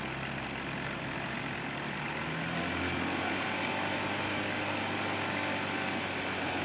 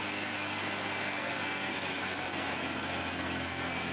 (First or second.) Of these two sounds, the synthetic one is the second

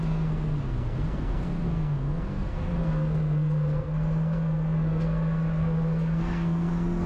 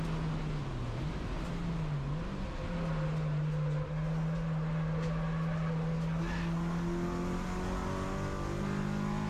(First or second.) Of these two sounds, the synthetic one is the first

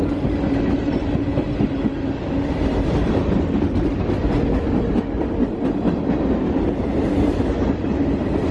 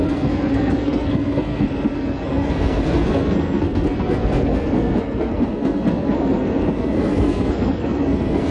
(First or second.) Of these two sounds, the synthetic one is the second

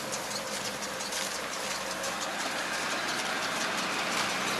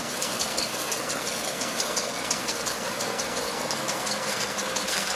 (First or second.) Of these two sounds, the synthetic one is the second